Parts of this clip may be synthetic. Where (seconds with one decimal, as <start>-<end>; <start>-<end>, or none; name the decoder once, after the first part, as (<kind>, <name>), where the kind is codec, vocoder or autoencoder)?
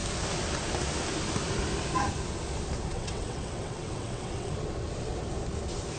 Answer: 2.9-4.5 (vocoder, WaveNeXt)